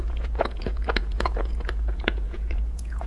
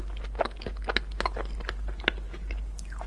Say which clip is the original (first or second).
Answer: second